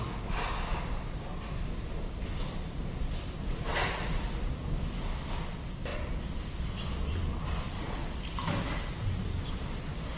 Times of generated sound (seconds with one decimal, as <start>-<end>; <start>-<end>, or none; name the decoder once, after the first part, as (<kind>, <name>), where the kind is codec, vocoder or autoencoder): 3.8-4.3 (vocoder, BigVGAN v2)